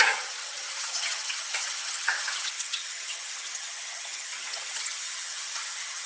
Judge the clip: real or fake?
fake